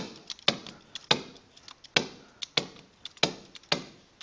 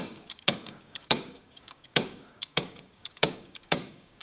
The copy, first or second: second